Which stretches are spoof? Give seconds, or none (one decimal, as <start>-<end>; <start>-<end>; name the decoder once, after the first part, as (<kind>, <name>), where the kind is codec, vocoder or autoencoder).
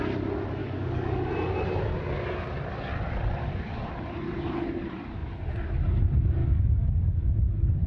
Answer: 0.6-1.3 (codec, DAC); 6.4-6.9